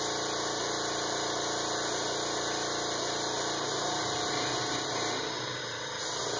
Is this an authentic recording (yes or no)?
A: yes